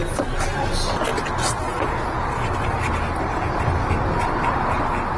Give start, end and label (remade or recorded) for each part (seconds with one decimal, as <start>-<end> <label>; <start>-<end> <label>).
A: 0.0-5.2 recorded

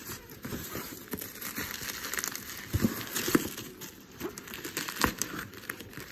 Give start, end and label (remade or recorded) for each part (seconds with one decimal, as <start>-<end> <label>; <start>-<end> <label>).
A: 0.0-1.0 remade; 1.0-4.7 recorded; 4.7-6.1 remade